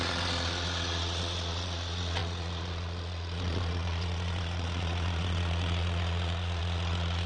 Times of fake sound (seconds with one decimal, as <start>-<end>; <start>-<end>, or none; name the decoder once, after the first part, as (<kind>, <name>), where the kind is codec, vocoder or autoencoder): 0.0-7.3 (vocoder, Vocos)